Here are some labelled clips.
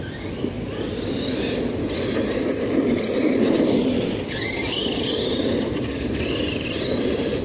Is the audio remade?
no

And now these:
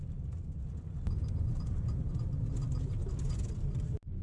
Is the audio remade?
no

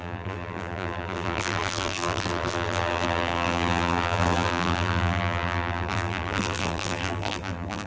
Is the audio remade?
yes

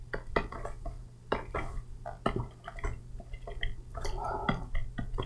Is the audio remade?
no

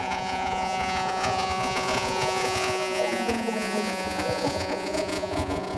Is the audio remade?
yes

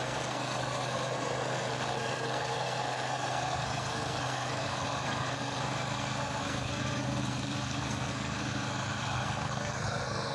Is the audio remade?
yes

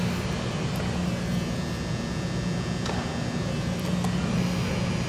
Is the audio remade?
no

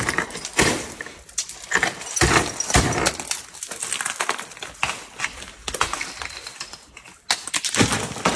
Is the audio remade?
no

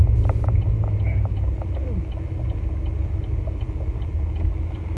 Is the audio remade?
no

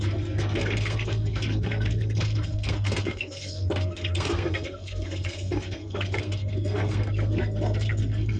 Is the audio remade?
yes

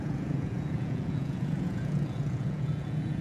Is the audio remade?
yes